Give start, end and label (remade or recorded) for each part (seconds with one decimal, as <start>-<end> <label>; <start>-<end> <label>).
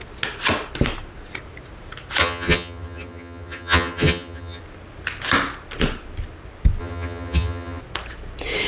0.0-2.2 recorded; 2.2-4.6 remade; 4.6-6.8 recorded; 6.8-7.8 remade; 7.8-8.7 recorded